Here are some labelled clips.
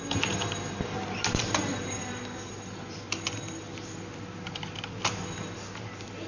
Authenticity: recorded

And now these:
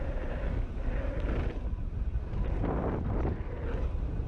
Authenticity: recorded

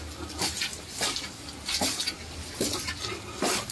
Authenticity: recorded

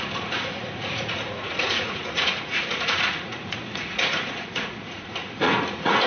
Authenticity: remade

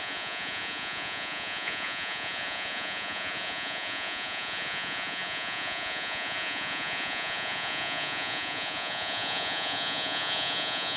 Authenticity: remade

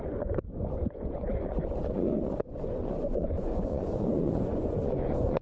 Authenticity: remade